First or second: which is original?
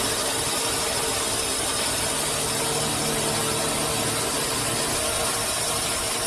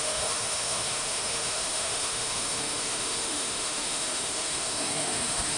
first